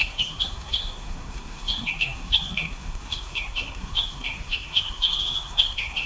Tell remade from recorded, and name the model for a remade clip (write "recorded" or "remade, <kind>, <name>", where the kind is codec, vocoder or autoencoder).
remade, codec, SNAC